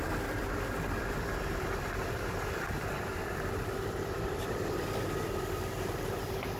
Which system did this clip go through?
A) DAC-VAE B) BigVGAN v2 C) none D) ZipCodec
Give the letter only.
B